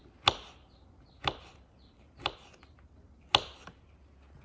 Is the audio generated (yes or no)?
no